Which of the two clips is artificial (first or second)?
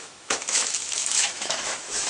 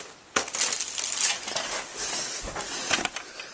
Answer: first